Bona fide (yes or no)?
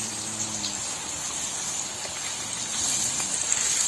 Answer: yes